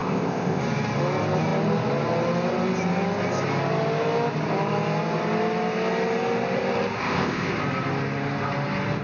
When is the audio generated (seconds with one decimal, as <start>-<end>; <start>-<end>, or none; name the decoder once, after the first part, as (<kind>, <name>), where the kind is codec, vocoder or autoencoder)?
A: 0.0-0.6 (codec, ZipCodec); 7.0-7.5